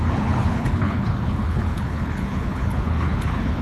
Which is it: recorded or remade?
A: remade